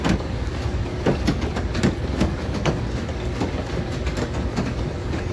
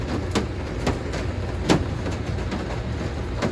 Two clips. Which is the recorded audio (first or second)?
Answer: second